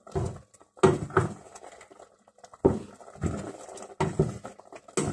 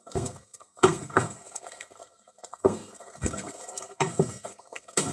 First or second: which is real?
first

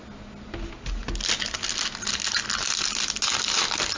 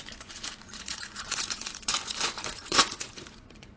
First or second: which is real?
first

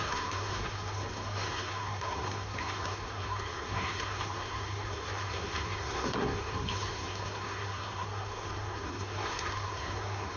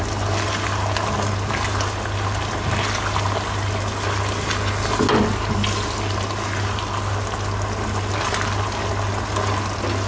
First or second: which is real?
second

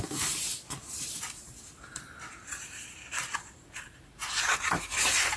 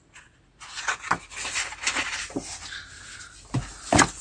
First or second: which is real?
second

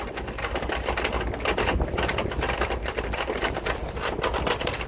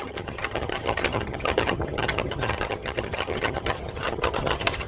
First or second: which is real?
first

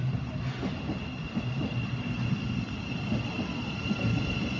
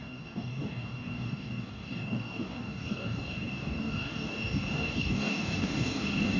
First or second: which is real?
first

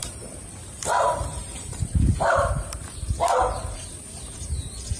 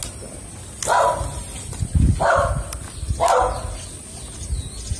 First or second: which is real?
second